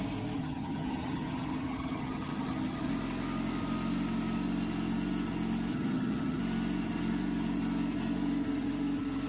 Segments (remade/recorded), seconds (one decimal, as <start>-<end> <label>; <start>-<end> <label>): 0.0-0.4 recorded; 0.4-2.9 remade; 2.9-5.7 recorded; 5.7-6.4 remade; 6.4-9.3 recorded